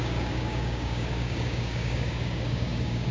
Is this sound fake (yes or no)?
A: yes